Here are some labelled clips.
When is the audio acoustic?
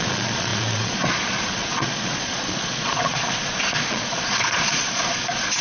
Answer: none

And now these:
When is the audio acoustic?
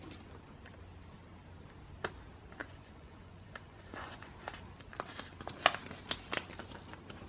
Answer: 0.0-2.6; 4.3-7.3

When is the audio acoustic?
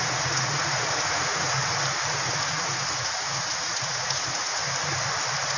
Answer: 1.6-2.5; 4.6-5.6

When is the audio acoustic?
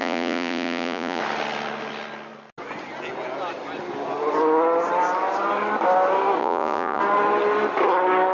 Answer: 1.2-6.4; 7.0-8.3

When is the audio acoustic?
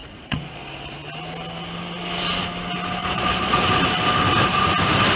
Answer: 0.6-3.0; 3.6-5.2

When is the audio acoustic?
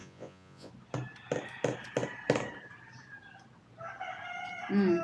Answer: 0.7-5.0